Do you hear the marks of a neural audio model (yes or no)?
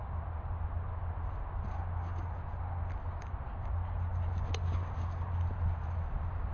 no